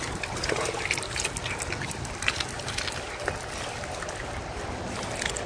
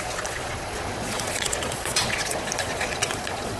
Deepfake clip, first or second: second